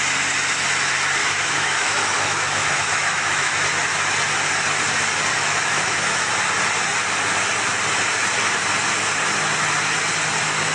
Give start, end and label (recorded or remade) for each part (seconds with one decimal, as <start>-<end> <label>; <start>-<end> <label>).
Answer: 0.0-1.2 recorded; 1.2-3.5 remade; 3.5-5.3 recorded; 5.3-6.3 remade; 6.3-10.7 recorded